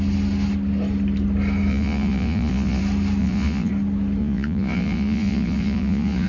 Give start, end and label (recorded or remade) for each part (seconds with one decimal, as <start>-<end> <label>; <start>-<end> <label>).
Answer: 0.0-1.7 recorded; 1.7-2.8 remade; 2.8-3.2 recorded; 3.2-3.7 remade; 3.7-4.2 recorded; 4.2-6.3 remade